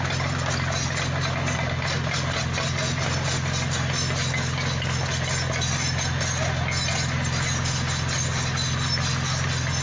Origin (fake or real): real